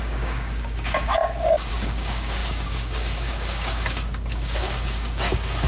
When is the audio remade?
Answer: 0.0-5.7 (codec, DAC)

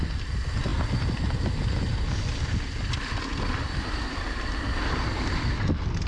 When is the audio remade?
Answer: none

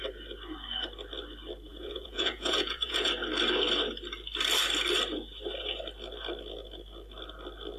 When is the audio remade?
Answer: 1.7-3.1 (vocoder, Vocos)